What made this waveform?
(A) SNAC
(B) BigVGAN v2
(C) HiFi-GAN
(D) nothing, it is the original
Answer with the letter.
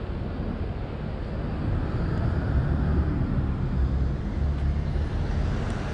D